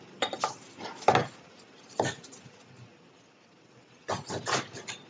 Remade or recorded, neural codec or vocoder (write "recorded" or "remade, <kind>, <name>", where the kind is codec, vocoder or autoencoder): recorded